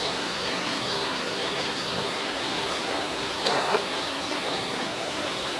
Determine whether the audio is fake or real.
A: fake